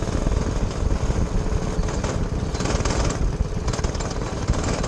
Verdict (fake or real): real